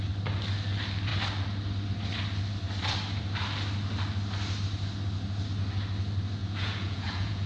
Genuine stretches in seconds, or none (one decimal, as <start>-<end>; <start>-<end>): 0.0-6.4